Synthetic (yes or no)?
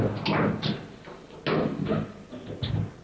no